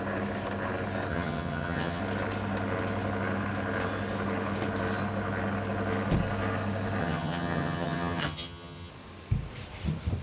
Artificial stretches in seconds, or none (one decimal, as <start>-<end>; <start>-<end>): 1.1-2.0; 7.0-8.9